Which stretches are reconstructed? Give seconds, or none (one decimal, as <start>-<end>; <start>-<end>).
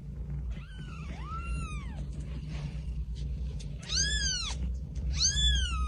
0.9-5.9